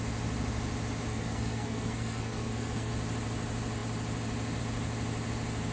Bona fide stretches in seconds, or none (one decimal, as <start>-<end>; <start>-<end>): 0.0-1.1; 2.9-5.7